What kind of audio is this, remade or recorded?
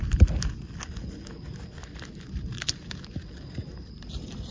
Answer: recorded